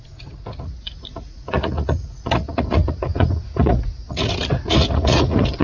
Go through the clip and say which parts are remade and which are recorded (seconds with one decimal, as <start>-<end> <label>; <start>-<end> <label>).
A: 0.0-5.6 remade